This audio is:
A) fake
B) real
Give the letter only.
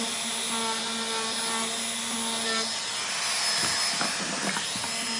B